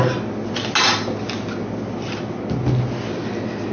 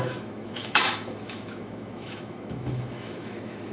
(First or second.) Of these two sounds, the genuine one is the first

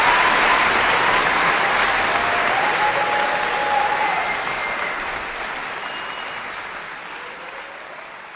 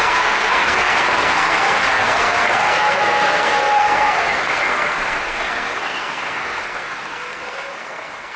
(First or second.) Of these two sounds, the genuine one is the first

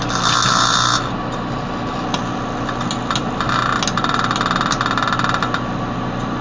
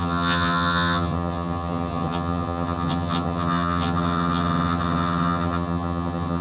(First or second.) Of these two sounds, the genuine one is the first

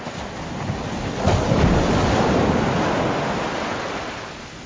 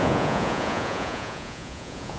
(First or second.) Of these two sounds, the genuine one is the first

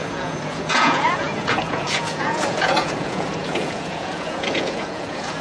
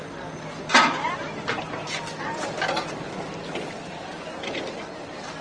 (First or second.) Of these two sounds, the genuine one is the second